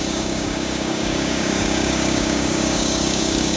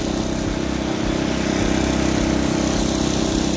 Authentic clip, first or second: second